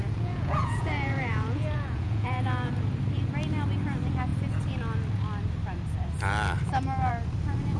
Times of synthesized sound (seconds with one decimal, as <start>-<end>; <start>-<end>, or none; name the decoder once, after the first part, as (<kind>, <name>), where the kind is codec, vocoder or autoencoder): 0.0-2.7 (vocoder, Vocos)